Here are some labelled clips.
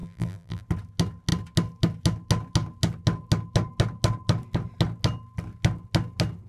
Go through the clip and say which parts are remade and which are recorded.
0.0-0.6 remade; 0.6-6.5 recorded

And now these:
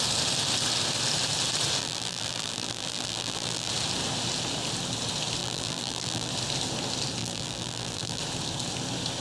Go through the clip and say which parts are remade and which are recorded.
0.0-1.8 recorded; 1.8-3.7 remade; 3.7-5.4 recorded; 5.4-6.3 remade; 6.3-7.2 recorded; 7.2-8.2 remade; 8.2-9.2 recorded